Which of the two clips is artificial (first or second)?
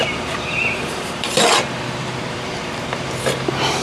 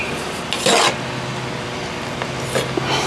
first